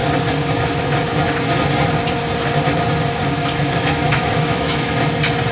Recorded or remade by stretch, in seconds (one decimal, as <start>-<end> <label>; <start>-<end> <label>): 0.0-3.4 recorded; 3.4-4.9 remade; 4.9-5.5 recorded